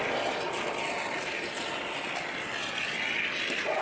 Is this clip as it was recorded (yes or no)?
yes